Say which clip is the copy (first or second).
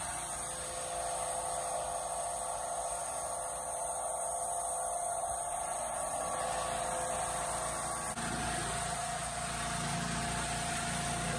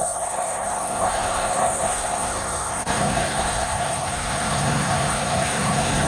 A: second